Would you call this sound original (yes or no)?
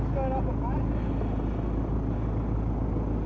yes